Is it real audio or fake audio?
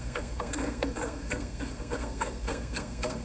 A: fake